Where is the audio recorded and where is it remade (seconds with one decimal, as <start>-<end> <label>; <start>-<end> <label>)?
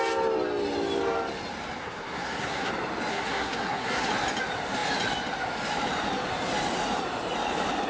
0.0-1.8 recorded; 1.8-2.7 remade; 2.7-3.1 recorded; 3.1-4.1 remade; 4.1-7.9 recorded